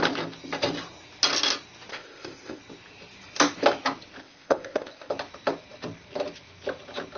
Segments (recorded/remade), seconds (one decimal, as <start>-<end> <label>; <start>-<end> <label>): 0.0-1.9 recorded; 1.9-2.6 remade; 2.6-4.2 recorded; 4.2-5.1 remade; 5.1-7.2 recorded